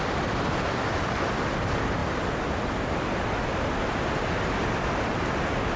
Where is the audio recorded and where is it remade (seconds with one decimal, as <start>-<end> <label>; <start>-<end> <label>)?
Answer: 0.0-5.8 recorded